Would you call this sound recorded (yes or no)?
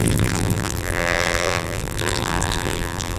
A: no